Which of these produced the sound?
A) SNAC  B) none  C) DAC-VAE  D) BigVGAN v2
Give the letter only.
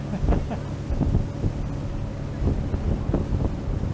B